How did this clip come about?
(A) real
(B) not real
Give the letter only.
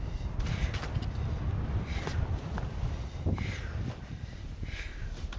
A